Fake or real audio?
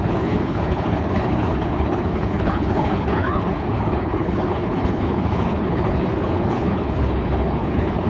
fake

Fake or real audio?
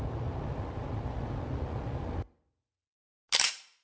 real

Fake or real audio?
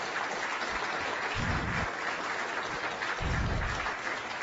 real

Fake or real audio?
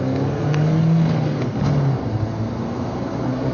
fake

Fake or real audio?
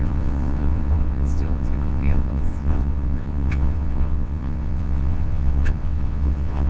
fake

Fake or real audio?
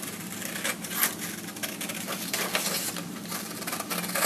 real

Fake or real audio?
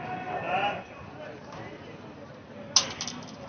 real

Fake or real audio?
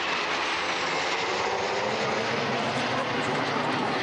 real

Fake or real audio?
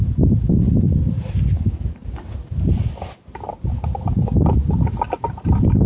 real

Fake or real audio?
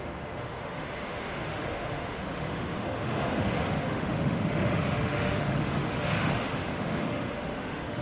fake